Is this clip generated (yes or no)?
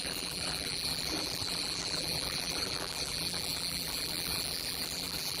yes